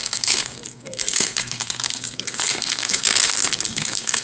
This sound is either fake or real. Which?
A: fake